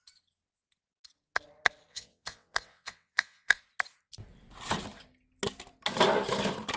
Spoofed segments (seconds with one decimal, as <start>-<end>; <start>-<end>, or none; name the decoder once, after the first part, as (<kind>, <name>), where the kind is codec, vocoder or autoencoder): 1.9-3.6 (vocoder, WaveNeXt)